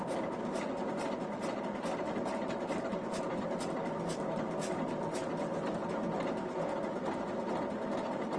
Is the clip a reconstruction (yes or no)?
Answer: no